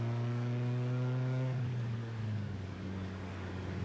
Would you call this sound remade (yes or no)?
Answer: yes